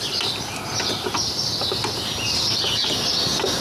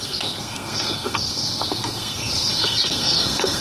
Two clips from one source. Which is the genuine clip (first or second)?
first